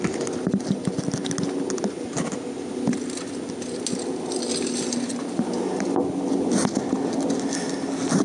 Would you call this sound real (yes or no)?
yes